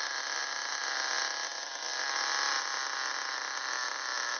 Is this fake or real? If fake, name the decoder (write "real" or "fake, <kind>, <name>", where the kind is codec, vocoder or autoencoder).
real